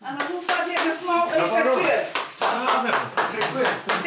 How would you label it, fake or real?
real